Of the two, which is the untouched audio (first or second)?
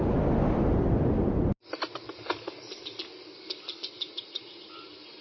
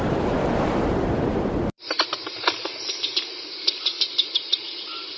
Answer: first